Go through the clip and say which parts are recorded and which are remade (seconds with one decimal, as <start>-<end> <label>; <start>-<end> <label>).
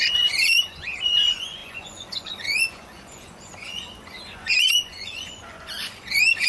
0.0-6.5 remade